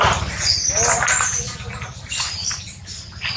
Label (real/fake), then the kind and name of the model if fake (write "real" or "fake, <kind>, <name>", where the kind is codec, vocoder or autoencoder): real